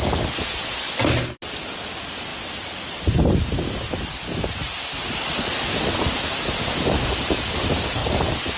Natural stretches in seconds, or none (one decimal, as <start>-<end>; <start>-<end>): 0.0-8.6